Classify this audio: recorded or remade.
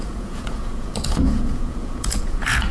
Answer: remade